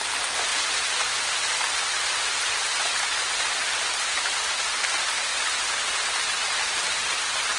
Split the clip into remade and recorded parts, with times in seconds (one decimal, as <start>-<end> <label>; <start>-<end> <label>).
0.0-7.6 recorded